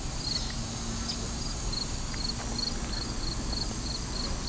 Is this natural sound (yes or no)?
yes